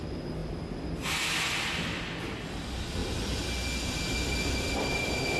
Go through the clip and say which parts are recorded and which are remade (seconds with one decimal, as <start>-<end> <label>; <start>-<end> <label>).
0.0-5.4 recorded